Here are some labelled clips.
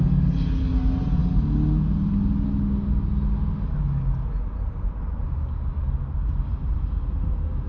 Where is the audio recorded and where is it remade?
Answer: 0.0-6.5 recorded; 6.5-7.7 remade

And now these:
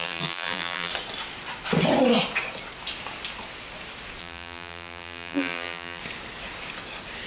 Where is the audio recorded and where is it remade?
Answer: 0.0-0.9 remade; 0.9-4.2 recorded; 4.2-6.0 remade; 6.0-7.3 recorded

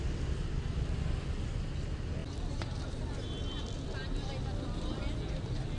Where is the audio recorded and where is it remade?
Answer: 0.0-5.8 recorded

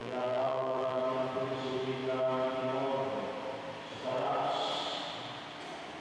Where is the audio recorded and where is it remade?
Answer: 0.0-1.0 remade; 1.0-6.0 recorded

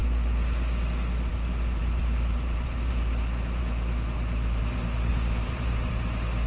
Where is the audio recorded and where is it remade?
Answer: 0.0-1.8 recorded; 1.8-2.9 remade; 2.9-5.1 recorded; 5.1-5.9 remade; 5.9-6.5 recorded

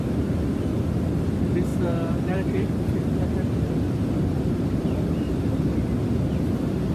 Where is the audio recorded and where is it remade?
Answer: 0.0-1.7 recorded; 1.7-5.8 remade; 5.8-6.9 recorded